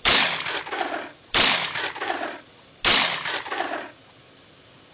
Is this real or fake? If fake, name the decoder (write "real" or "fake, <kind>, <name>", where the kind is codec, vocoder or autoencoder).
real